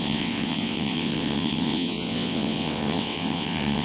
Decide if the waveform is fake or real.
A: fake